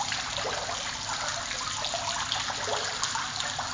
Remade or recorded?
recorded